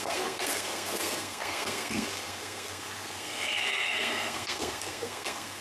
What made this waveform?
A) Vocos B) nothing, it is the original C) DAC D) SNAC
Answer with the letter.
D